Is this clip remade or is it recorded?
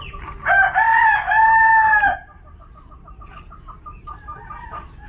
recorded